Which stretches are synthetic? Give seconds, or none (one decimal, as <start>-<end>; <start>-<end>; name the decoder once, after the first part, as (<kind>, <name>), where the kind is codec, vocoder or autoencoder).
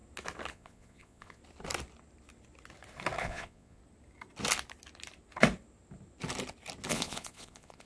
0.5-1.4 (vocoder, Vocos); 3.2-3.8; 6.9-7.9